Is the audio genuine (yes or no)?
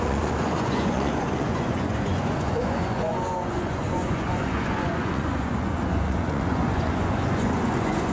no